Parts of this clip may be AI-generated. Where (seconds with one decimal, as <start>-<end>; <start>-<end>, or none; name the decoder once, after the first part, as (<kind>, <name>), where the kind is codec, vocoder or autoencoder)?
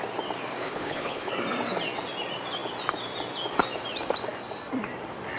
0.6-1.3 (codec, HILCodec)